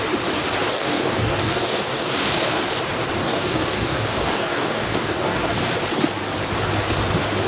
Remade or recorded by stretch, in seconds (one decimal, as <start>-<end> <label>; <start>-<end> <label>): 0.0-0.7 recorded; 0.7-2.7 remade; 2.7-3.2 recorded; 3.2-5.7 remade; 5.7-7.5 recorded